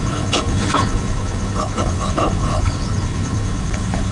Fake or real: fake